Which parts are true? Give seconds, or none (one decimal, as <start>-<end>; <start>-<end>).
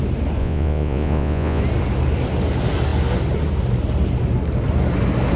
0.0-0.4; 1.6-5.4